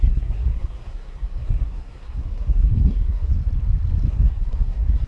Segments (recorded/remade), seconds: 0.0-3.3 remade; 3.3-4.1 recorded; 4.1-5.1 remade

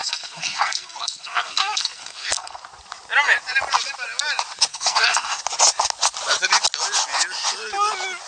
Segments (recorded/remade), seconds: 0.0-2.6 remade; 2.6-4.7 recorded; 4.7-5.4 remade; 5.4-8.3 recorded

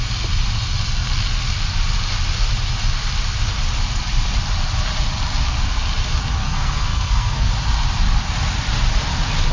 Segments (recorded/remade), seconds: 0.0-6.4 recorded; 6.4-7.5 remade; 7.5-9.5 recorded

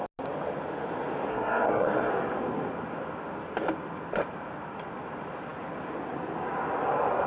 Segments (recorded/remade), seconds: 0.0-1.3 recorded; 1.3-2.1 remade; 2.1-7.3 recorded